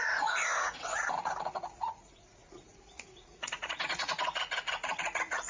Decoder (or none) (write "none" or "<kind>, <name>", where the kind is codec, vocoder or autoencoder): vocoder, Vocos